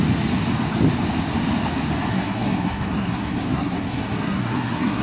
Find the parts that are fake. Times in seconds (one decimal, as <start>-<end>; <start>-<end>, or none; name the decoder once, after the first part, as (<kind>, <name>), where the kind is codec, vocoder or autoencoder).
2.1-5.0 (codec, SNAC)